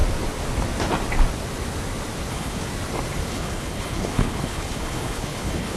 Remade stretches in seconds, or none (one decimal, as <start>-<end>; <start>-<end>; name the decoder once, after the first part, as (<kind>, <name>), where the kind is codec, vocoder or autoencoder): 2.3-2.7 (codec, HILCodec); 3.3-5.8